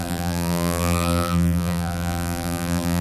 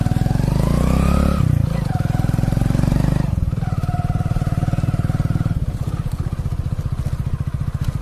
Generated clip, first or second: first